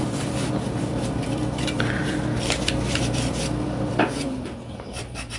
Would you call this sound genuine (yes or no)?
no